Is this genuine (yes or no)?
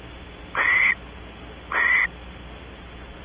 yes